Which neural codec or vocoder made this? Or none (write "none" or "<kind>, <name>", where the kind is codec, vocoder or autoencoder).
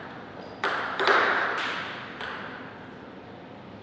vocoder, BigVGAN v2